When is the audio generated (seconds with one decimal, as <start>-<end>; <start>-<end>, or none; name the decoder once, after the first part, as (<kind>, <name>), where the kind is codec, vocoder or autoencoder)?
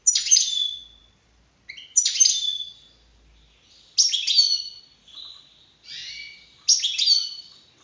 none